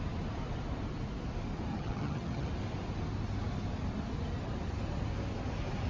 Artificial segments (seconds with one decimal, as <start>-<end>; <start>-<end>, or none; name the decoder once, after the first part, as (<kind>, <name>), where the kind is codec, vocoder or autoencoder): 1.7-2.5 (vocoder, HiFi-GAN)